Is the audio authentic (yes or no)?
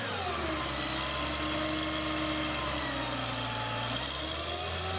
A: yes